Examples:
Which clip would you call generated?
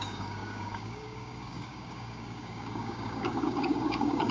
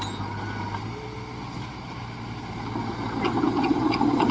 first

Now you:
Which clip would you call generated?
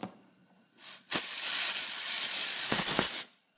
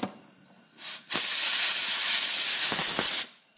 first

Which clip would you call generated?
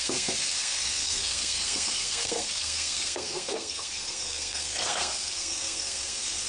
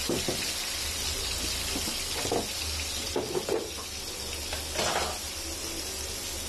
first